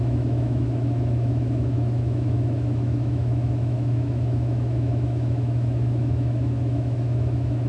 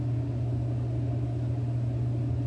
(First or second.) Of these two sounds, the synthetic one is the first